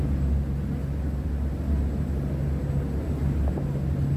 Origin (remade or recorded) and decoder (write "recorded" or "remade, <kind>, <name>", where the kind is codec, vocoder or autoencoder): recorded